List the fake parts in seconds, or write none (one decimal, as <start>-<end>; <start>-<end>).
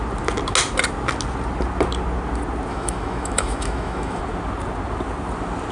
2.7-4.2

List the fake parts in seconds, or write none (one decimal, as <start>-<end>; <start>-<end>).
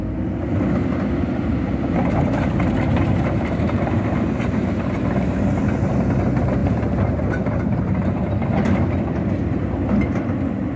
1.4-5.9; 6.6-8.2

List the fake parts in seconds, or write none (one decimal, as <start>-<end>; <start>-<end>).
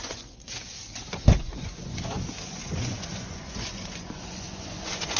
0.0-5.2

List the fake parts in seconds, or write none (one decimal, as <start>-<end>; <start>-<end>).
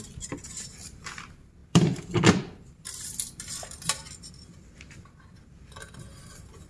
0.0-6.7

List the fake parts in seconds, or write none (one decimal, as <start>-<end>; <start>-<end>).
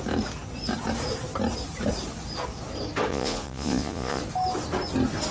3.1-4.2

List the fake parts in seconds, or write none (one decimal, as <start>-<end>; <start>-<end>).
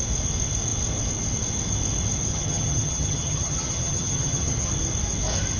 2.3-4.7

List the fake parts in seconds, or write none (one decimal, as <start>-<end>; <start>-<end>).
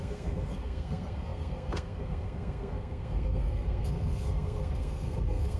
0.0-5.6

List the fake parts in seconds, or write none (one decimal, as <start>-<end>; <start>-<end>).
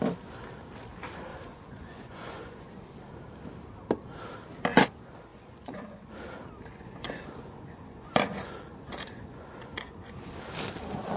1.3-2.7; 5.3-6.2; 6.7-10.3